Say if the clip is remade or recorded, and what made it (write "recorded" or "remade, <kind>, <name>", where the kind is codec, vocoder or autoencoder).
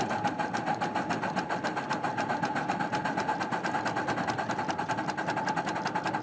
recorded